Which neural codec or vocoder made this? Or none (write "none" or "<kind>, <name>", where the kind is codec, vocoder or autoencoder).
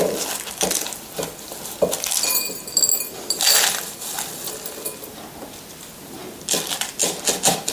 none